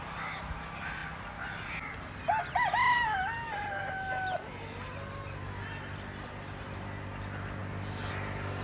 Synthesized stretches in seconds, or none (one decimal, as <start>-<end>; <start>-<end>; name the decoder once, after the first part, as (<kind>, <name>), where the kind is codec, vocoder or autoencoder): none